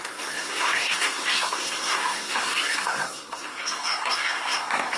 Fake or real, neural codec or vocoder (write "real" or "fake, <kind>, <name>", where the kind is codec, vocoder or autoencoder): fake, codec, SNAC